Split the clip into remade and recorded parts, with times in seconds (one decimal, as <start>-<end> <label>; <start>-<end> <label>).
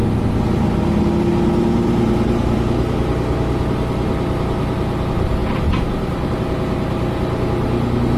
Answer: 0.0-5.4 recorded; 5.4-6.4 remade; 6.4-8.2 recorded